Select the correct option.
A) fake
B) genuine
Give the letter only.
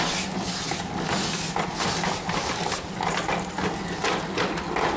B